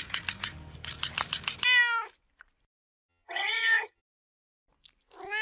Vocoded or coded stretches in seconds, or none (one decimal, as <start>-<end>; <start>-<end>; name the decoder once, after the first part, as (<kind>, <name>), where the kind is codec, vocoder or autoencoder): 3.1-4.0 (vocoder, HiFi-GAN)